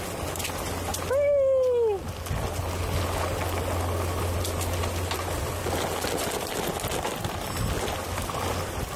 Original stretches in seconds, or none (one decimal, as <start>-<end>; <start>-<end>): 0.0-9.0